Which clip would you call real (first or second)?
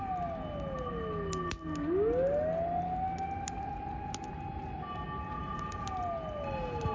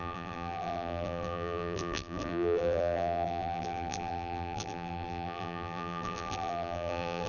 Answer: first